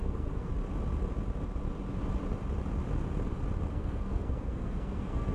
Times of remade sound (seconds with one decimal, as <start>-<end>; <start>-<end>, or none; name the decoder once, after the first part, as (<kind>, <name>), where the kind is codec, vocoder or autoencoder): 0.0-0.5 (codec, SNAC); 3.7-5.3